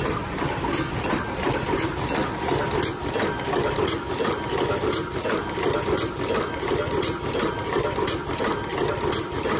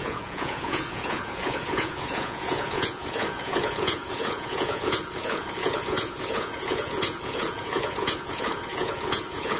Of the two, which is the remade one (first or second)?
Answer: second